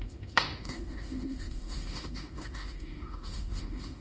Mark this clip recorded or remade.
remade